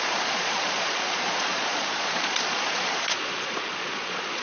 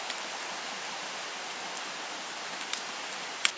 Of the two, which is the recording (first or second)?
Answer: second